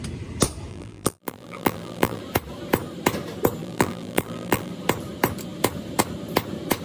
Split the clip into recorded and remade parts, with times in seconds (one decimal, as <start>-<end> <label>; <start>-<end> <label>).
0.0-0.7 recorded; 0.7-2.2 remade; 2.2-3.6 recorded; 3.6-4.7 remade; 4.7-6.8 recorded